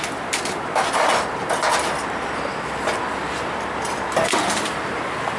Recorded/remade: remade